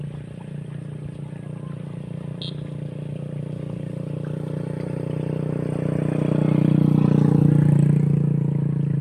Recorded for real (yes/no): yes